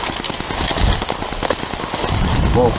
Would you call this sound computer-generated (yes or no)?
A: no